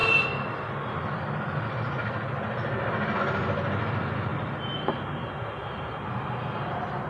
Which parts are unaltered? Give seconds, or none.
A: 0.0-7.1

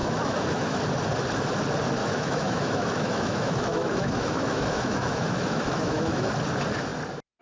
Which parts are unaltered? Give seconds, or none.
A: 0.8-2.0; 6.3-7.4